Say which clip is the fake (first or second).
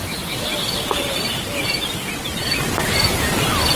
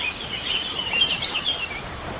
second